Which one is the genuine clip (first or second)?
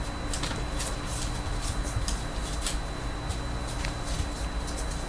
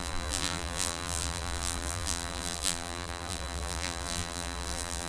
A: first